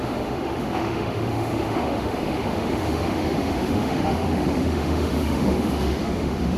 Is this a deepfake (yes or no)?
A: yes